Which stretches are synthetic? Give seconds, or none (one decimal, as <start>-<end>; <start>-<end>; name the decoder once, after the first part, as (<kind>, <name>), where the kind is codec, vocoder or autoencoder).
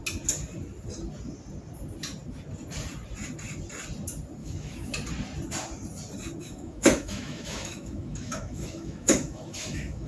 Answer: 4.4-4.9 (autoencoder, DAC-VAE); 6.4-10.1